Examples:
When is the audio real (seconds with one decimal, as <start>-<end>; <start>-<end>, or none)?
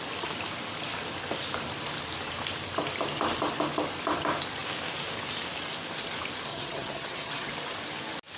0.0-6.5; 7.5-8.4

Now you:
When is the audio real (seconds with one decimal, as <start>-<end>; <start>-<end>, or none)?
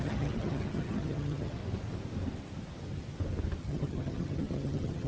1.6-3.6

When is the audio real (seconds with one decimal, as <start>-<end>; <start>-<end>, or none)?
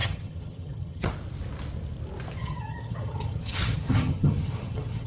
1.1-2.4